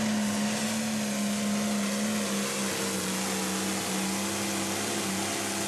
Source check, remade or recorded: recorded